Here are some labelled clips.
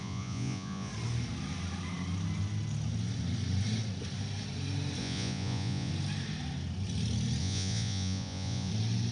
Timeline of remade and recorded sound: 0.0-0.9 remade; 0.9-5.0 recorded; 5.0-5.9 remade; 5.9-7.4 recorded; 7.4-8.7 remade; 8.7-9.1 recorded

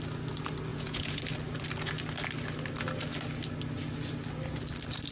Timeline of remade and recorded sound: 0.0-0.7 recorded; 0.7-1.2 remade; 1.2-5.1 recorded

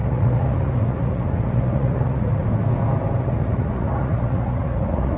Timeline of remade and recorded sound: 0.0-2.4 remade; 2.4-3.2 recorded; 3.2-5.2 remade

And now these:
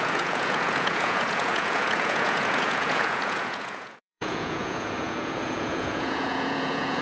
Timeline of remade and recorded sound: 0.0-7.0 remade